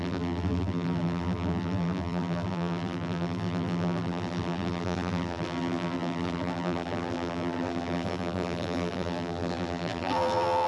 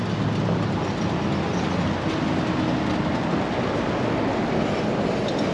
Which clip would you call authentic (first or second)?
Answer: second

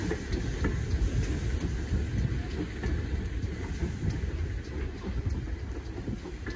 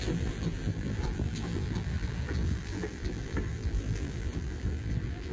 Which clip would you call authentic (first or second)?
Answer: first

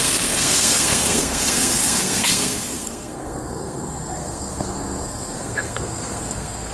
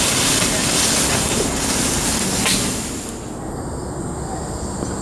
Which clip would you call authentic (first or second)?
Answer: second